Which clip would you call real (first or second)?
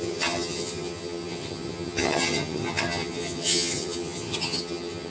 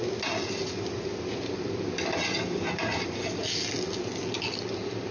second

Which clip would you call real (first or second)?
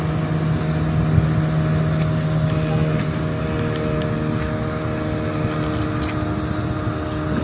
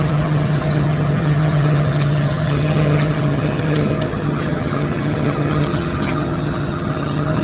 first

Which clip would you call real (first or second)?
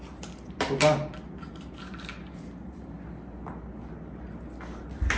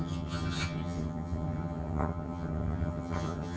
first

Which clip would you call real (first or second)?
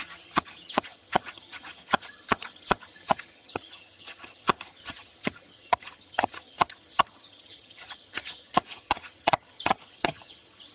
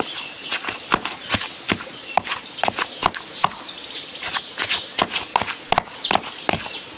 second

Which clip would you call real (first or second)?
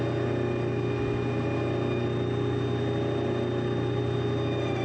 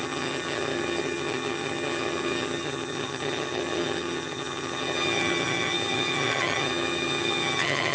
first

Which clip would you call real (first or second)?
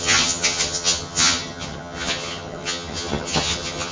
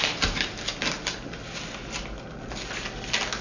second